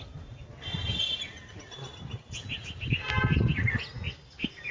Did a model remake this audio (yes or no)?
no